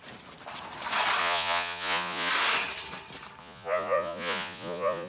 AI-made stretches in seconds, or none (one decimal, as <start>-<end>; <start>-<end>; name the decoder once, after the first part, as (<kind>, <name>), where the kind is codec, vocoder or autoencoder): 1.2-2.3 (vocoder, Vocos); 3.4-5.1